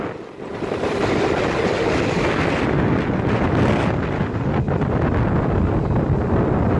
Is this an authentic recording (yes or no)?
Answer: yes